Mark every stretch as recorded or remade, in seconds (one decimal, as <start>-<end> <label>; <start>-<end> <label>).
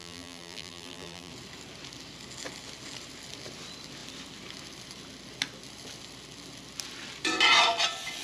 0.0-1.3 remade; 1.3-8.2 recorded